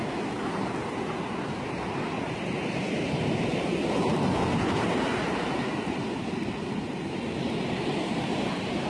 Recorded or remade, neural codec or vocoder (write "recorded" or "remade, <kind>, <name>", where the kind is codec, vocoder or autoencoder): remade, vocoder, BigVGAN v2